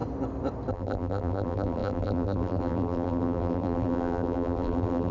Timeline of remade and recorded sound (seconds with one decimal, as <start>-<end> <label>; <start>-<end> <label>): 0.0-0.7 recorded; 0.7-5.1 remade